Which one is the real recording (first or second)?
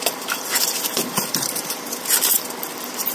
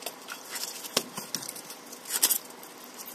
second